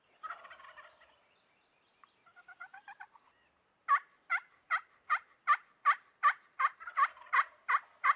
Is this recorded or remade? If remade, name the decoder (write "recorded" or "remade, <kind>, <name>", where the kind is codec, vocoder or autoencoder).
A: recorded